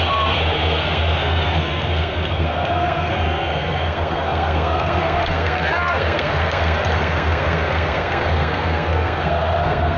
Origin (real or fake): fake